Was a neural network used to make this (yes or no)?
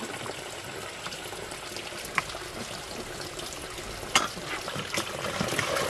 no